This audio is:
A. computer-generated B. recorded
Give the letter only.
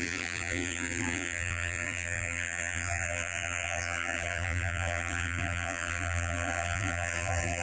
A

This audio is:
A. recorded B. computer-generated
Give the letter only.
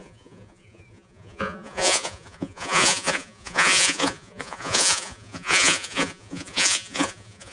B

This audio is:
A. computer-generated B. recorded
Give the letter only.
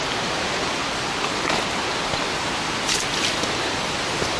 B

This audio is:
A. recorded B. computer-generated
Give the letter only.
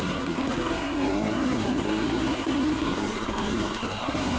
B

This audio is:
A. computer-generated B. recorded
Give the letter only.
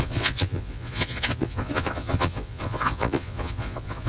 A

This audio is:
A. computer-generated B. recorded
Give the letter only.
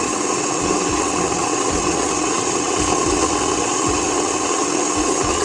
A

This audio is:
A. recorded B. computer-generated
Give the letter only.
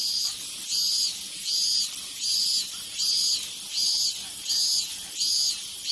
A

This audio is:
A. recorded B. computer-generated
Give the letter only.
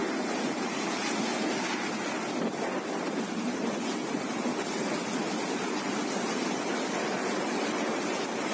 A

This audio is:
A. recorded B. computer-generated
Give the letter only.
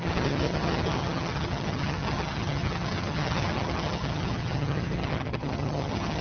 B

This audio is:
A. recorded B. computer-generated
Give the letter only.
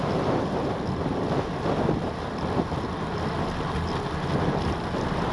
A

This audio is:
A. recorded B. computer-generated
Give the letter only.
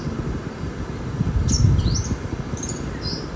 A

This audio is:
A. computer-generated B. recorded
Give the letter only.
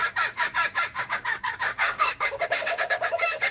A